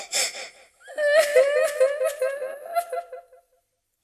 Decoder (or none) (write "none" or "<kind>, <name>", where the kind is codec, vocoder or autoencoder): none